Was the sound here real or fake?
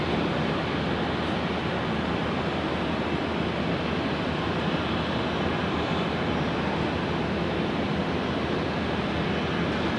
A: real